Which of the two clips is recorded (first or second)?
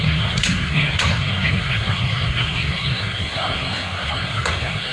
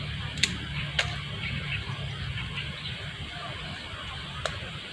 second